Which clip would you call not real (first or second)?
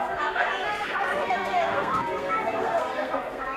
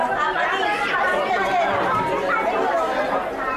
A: first